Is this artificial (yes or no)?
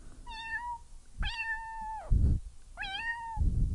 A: no